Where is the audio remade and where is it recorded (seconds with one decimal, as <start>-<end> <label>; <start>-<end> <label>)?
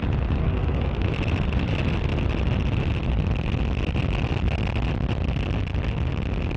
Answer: 0.0-0.4 recorded; 0.4-1.1 remade; 1.1-6.6 recorded